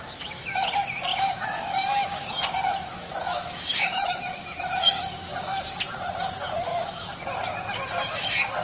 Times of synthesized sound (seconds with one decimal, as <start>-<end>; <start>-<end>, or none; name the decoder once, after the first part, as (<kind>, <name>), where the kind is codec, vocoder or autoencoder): 0.0-0.7 (autoencoder, DAC-VAE); 1.1-2.3; 2.9-5.7; 6.7-7.2